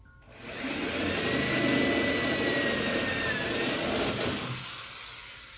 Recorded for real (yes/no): yes